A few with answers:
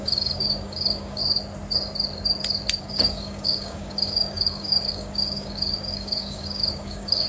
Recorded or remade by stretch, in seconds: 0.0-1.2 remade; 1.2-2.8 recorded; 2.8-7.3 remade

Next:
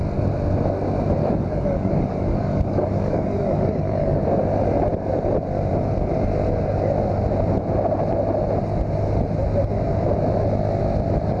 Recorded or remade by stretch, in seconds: 0.0-1.2 recorded; 1.2-4.1 remade; 4.1-11.4 recorded

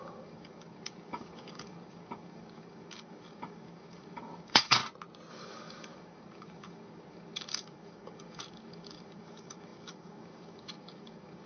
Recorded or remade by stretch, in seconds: 0.0-4.8 remade; 4.8-5.3 recorded; 5.3-11.5 remade

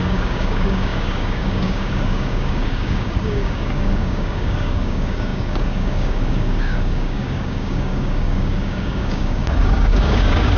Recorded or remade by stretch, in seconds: 0.0-10.6 remade

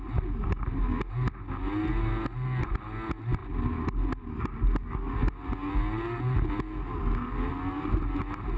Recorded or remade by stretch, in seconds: 0.0-8.6 recorded